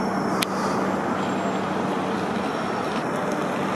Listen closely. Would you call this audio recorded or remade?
recorded